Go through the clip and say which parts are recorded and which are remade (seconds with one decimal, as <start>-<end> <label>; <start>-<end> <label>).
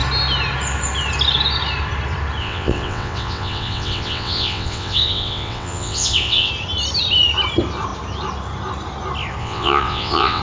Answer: 0.0-2.4 recorded; 2.4-6.5 remade; 6.5-9.4 recorded; 9.4-10.4 remade